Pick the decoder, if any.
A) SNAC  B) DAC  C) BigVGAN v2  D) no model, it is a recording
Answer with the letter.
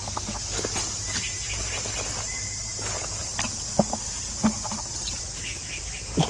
D